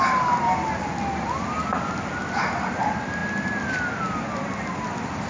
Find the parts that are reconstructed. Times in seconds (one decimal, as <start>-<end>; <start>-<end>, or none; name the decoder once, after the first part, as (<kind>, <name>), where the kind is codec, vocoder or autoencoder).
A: none